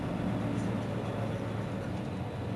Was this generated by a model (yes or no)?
no